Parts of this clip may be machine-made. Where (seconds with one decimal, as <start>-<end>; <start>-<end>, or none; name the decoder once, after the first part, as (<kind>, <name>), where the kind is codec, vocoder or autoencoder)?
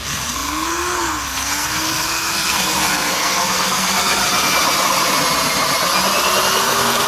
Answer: 0.0-4.2 (codec, SNAC); 6.6-7.1